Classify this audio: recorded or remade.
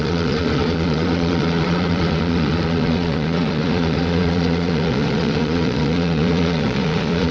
remade